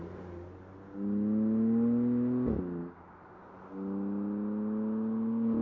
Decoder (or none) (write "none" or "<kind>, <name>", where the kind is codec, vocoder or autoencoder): none